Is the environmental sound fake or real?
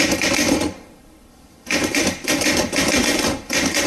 fake